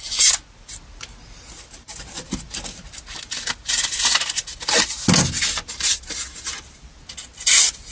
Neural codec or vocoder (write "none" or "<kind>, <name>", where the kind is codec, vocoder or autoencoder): none